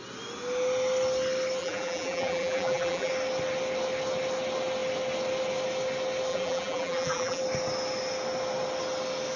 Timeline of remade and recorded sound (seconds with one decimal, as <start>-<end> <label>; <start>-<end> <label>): 0.0-1.6 recorded; 1.6-3.1 remade; 3.1-6.3 recorded; 6.3-7.4 remade; 7.4-9.4 recorded